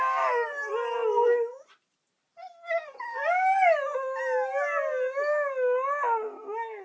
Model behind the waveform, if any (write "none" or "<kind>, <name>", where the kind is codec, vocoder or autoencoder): none